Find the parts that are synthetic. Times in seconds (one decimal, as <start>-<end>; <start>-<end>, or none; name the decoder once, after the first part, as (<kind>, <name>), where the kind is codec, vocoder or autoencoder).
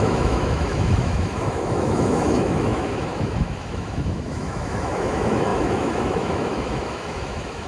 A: 0.0-7.7 (autoencoder, DAC-VAE)